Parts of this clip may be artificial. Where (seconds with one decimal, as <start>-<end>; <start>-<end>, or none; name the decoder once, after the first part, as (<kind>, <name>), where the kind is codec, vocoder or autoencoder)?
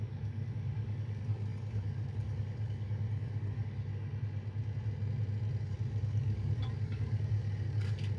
0.0-3.9 (codec, DAC); 5.6-8.2